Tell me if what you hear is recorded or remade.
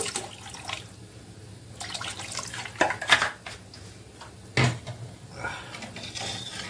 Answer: recorded